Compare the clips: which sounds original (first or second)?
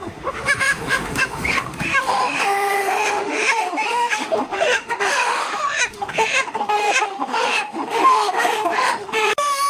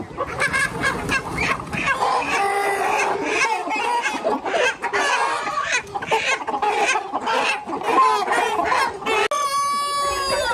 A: second